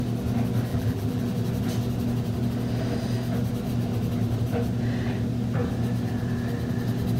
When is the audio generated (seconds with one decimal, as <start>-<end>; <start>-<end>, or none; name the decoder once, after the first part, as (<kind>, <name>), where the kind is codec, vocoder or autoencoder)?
0.7-1.2 (vocoder, BigVGAN v2)